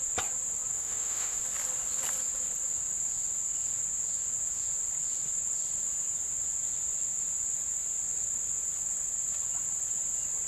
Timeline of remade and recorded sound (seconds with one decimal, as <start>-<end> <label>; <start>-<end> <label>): 0.0-0.7 recorded; 0.7-1.4 remade; 1.4-10.5 recorded

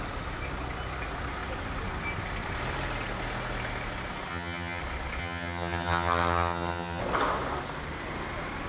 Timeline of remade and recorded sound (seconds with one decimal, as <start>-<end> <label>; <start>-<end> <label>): 0.0-4.3 recorded; 4.3-4.8 remade; 4.8-5.2 recorded; 5.2-7.0 remade; 7.0-8.7 recorded

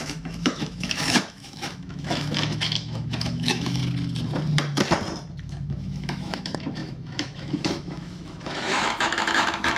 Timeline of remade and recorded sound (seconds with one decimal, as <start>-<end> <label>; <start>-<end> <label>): 0.0-3.8 remade; 3.8-5.4 recorded; 5.4-9.8 remade

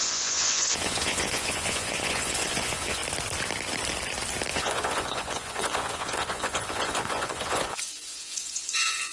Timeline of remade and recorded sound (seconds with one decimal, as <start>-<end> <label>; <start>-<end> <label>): 0.0-3.0 remade; 3.0-4.5 recorded; 4.5-9.1 remade